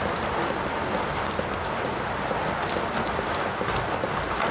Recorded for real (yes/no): yes